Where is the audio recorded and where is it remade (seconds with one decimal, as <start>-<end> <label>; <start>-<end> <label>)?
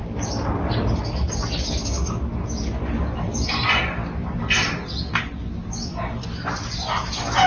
0.0-7.5 recorded